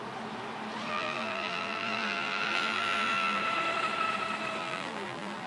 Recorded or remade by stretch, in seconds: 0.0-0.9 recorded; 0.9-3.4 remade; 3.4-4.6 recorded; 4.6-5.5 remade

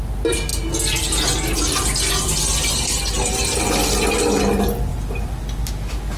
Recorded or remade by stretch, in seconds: 0.0-6.2 recorded